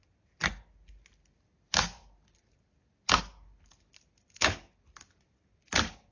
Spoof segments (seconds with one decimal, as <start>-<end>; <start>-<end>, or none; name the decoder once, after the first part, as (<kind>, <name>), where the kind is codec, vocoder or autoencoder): none